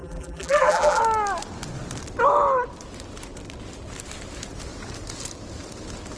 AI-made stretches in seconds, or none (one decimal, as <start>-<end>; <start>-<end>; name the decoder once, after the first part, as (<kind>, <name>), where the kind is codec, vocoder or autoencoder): 0.0-1.0 (vocoder, BigVGAN v2)